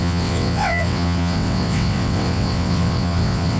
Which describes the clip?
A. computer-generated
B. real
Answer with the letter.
A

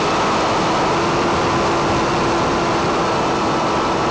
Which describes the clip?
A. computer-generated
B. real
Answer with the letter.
B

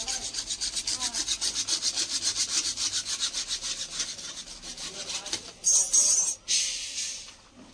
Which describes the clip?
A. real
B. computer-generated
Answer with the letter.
A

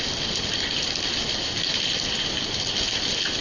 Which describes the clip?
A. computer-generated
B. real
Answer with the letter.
B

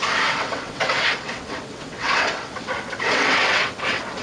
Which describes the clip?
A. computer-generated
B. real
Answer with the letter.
A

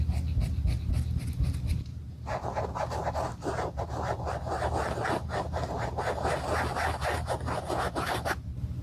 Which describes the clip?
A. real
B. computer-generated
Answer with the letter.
A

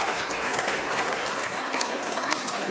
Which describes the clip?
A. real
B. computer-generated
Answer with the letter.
B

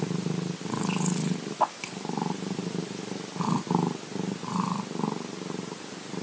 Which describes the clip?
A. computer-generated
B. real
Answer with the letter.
B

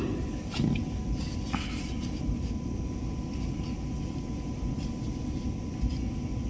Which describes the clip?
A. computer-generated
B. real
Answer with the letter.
B